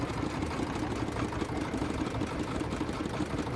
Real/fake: real